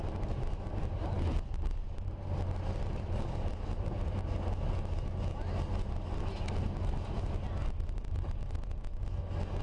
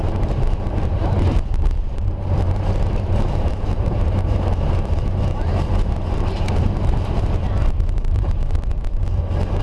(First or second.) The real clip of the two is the first